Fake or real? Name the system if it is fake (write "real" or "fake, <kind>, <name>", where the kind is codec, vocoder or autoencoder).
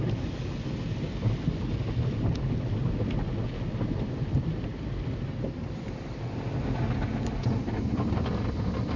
real